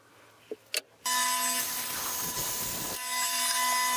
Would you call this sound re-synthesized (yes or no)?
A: no